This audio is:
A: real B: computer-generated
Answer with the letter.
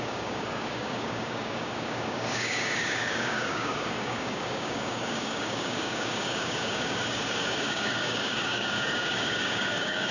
B